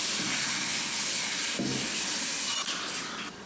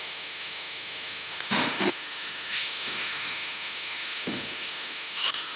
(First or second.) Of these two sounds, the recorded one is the first